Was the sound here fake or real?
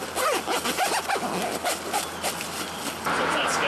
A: real